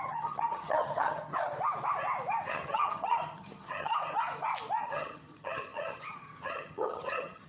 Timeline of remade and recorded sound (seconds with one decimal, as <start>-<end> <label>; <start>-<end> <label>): 0.0-1.3 remade; 1.3-2.5 recorded; 2.5-3.9 remade; 3.9-4.8 recorded; 4.8-7.5 remade